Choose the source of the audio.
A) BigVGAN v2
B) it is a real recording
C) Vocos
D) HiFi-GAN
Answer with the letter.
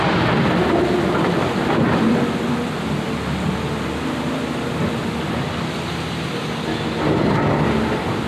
B